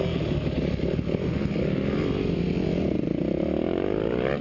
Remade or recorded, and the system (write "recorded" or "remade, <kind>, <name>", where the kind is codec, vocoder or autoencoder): recorded